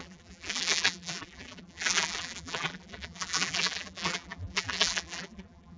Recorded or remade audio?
remade